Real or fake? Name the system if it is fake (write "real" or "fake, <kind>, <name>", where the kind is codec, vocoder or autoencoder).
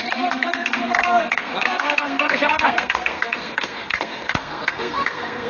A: fake, codec, SNAC